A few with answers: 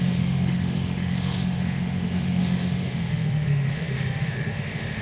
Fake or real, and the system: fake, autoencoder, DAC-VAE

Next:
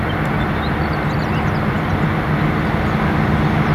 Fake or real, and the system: real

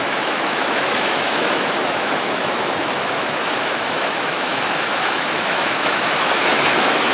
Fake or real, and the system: fake, autoencoder, DAC-VAE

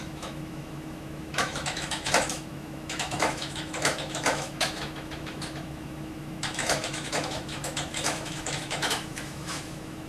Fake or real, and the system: fake, autoencoder, DAC-VAE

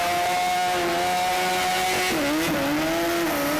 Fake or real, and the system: real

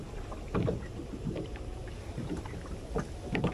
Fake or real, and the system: real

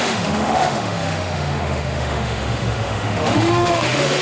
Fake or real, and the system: fake, autoencoder, DAC-VAE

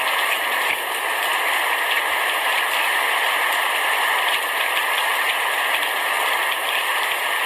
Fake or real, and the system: real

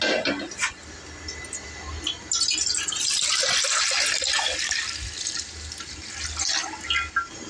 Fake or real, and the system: real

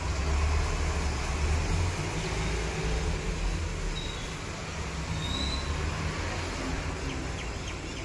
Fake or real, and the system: real